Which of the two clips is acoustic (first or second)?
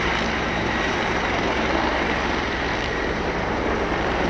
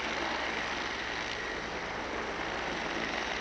second